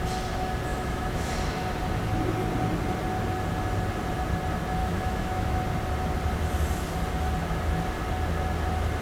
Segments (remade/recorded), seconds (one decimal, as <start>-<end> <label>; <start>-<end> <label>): 0.0-0.7 recorded; 0.7-1.3 remade; 1.3-4.8 recorded; 4.8-5.6 remade; 5.6-9.0 recorded